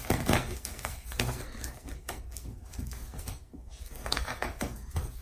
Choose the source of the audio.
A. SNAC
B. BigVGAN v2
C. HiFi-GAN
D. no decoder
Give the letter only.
A